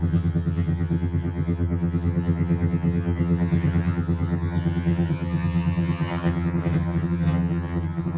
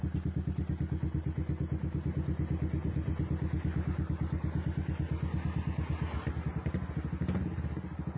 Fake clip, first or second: first